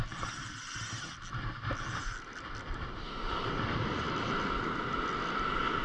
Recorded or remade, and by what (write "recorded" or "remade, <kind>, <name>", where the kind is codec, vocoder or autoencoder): recorded